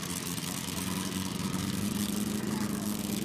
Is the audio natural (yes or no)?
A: no